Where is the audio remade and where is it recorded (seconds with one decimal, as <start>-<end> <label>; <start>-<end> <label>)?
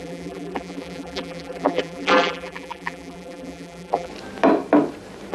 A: 0.0-4.1 remade; 4.1-5.3 recorded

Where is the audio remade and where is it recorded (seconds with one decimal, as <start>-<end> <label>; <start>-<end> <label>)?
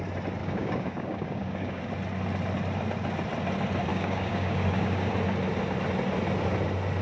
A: 0.0-0.4 recorded; 0.4-1.8 remade; 1.8-3.9 recorded; 3.9-5.1 remade; 5.1-7.0 recorded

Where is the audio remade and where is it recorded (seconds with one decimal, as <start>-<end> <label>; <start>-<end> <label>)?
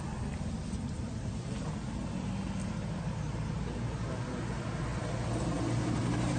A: 0.0-6.4 recorded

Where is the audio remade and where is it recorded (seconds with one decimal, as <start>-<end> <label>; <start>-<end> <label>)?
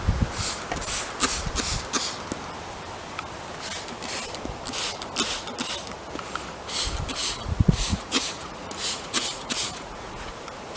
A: 0.0-7.2 recorded; 7.2-10.3 remade; 10.3-10.8 recorded